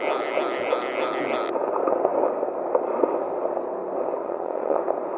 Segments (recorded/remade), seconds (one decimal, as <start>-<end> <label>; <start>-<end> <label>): 0.0-4.2 recorded; 4.2-4.8 remade; 4.8-5.2 recorded